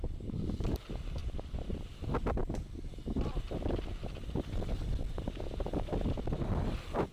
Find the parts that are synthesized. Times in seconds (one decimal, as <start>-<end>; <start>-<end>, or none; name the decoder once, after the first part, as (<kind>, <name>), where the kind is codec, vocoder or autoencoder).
1.2-1.8 (vocoder, BigVGAN v2)